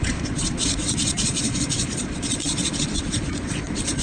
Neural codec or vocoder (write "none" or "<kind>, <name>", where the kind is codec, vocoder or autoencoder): vocoder, Vocos